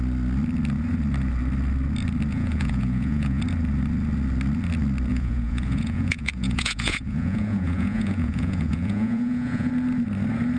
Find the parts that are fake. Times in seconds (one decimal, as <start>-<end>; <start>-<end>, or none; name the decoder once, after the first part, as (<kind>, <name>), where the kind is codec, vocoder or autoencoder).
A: 2.3-3.4 (vocoder, Vocos); 5.1-9.7